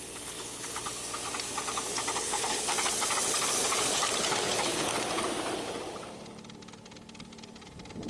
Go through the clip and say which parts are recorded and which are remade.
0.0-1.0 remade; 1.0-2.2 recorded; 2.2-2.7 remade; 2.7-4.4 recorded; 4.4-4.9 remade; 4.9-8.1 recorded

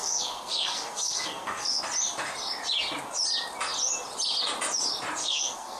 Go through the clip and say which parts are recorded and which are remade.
0.0-1.8 remade; 1.8-5.2 recorded; 5.2-5.8 remade

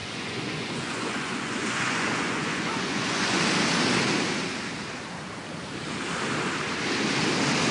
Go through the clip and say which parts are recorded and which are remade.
0.0-3.4 remade; 3.4-7.7 recorded

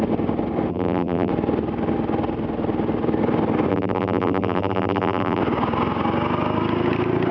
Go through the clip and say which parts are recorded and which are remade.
0.0-0.7 recorded; 0.7-1.3 remade; 1.3-3.7 recorded; 3.7-5.4 remade; 5.4-7.3 recorded

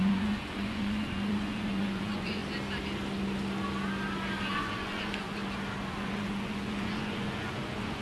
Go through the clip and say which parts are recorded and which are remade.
0.0-2.4 remade; 2.4-4.4 recorded; 4.4-5.4 remade; 5.4-5.9 recorded; 5.9-8.0 remade

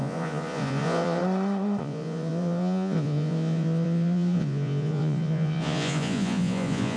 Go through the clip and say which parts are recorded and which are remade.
0.0-1.2 remade; 1.2-1.8 recorded; 1.8-7.0 remade

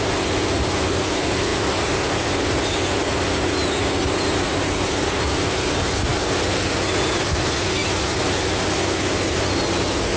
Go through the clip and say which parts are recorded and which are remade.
0.0-10.2 recorded

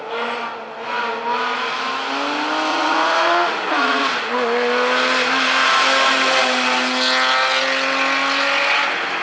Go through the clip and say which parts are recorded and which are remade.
0.0-2.7 recorded; 2.7-4.0 remade; 4.0-9.2 recorded